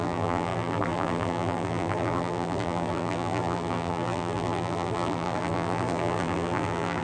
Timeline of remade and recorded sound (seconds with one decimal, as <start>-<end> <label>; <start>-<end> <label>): 0.0-7.0 remade